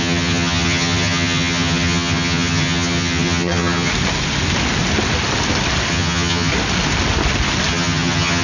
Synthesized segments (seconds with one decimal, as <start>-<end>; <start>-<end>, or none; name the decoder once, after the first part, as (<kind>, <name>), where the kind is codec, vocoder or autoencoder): 0.0-3.9 (vocoder, HiFi-GAN); 5.9-6.5; 7.7-8.4